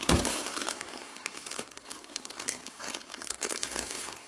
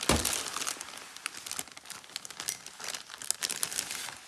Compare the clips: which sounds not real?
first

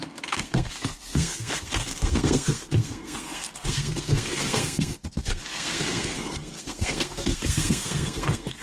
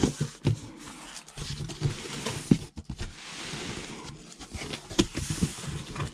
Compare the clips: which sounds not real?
first